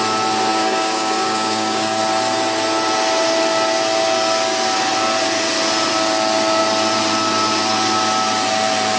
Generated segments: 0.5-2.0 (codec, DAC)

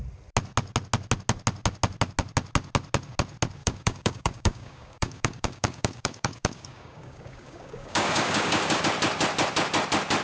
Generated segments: 3.6-8.8 (codec, DAC)

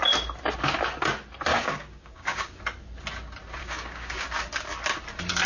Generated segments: 1.5-2.6 (codec, DAC); 3.6-4.4